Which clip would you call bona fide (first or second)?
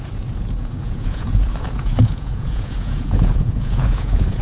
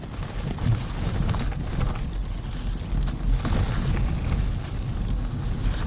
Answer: second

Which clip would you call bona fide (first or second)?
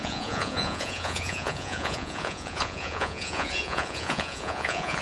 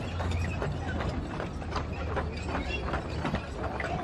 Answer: second